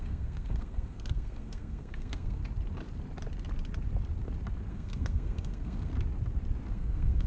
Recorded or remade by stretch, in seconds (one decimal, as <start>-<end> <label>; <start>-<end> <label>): 0.0-2.4 remade; 2.4-4.7 recorded; 4.7-5.9 remade; 5.9-6.7 recorded; 6.7-7.3 remade